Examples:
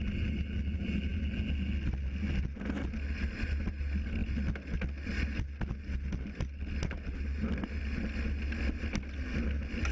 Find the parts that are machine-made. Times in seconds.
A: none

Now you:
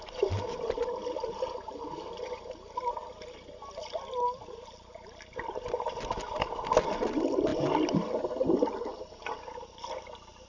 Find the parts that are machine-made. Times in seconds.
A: none

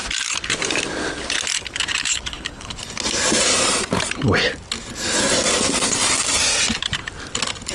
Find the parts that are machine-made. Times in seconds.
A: 2.0-2.8 (codec, HILCodec)

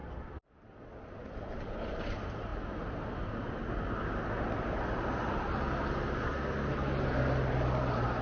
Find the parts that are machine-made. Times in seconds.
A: none

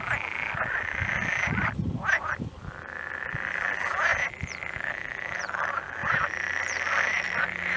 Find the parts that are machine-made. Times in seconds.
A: none

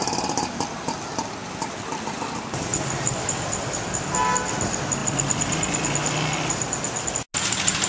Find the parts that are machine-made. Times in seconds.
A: none